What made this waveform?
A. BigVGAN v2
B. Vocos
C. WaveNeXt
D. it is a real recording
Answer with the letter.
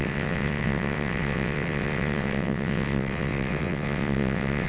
C